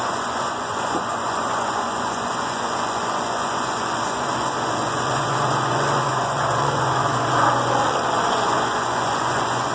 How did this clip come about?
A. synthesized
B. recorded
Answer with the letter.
A